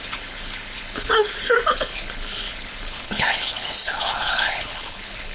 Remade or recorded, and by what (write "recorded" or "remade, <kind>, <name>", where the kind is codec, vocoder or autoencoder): remade, codec, HILCodec